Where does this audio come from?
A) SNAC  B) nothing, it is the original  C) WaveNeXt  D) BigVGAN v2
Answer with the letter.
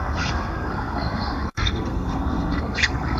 A